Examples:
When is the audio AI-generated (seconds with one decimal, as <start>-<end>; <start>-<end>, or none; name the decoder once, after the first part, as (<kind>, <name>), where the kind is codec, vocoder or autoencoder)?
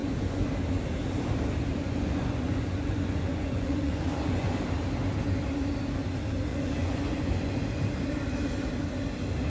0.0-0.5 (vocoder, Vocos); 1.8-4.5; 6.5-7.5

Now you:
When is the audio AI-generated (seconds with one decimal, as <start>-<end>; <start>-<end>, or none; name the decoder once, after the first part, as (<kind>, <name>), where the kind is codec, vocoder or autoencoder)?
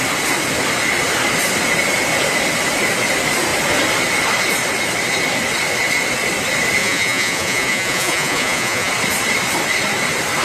6.8-8.9 (vocoder, Vocos)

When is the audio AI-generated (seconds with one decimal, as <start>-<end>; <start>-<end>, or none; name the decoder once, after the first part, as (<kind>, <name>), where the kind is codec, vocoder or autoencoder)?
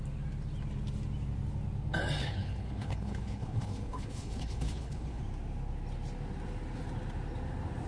2.2-5.2 (codec, HILCodec)